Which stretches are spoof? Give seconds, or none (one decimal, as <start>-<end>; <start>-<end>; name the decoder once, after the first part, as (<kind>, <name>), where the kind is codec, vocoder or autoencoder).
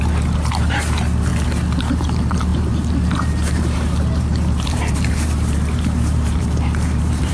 0.0-1.3 (vocoder, BigVGAN v2); 1.8-7.3